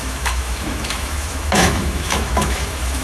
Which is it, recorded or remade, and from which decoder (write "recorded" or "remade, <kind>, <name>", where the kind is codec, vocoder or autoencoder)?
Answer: remade, autoencoder, DAC-VAE